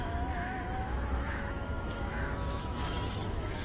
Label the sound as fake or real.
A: fake